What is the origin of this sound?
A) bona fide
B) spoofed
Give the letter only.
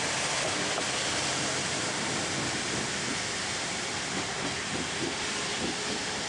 A